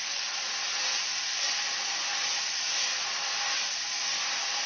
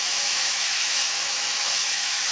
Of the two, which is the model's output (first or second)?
second